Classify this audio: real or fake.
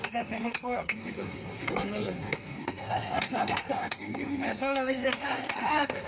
fake